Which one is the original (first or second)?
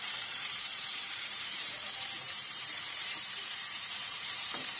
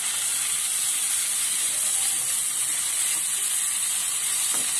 second